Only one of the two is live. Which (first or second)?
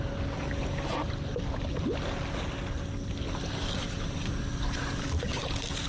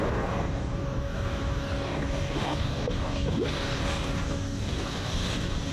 first